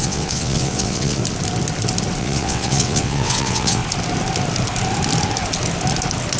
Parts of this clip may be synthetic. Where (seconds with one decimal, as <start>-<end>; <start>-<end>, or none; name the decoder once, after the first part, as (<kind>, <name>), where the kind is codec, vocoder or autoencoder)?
0.0-1.2 (vocoder, WaveNeXt); 2.2-3.8